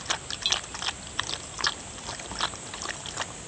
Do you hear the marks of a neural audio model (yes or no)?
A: no